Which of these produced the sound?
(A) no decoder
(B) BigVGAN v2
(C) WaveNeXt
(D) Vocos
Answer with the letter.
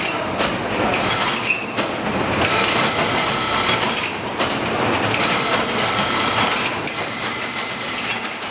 A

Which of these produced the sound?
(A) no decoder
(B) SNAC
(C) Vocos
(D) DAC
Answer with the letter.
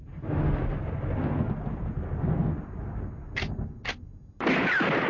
A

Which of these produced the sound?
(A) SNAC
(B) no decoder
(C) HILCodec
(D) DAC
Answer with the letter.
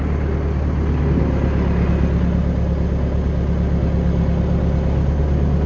B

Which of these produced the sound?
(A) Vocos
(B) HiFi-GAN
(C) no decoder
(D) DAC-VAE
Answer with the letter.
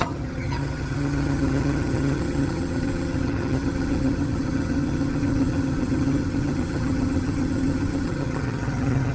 B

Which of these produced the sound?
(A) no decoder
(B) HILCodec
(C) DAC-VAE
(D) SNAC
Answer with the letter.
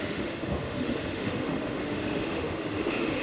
C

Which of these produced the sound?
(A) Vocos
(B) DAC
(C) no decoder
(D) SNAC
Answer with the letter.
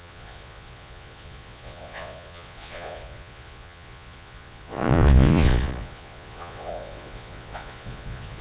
A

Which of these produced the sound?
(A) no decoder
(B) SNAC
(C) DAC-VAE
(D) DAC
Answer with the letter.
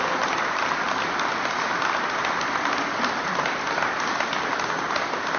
A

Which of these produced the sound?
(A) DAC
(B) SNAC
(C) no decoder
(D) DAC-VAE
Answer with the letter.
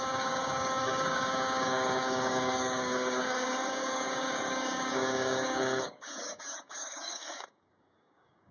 A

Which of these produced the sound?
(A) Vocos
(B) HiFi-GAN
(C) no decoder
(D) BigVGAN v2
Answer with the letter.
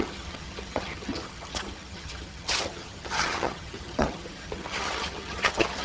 B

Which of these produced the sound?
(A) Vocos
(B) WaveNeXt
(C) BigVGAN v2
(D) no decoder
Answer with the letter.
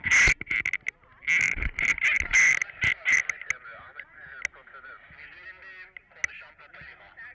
D